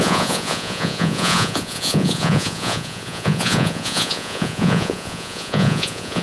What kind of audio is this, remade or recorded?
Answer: remade